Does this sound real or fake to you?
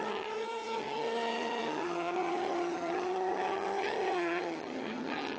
fake